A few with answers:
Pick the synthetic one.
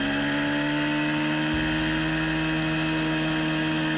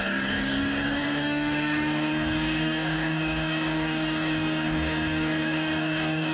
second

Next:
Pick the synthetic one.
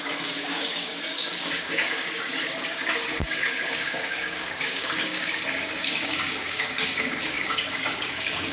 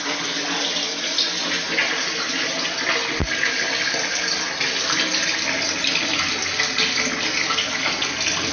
first